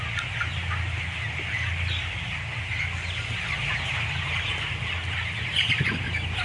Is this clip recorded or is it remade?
recorded